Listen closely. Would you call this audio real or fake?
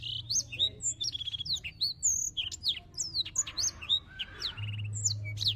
real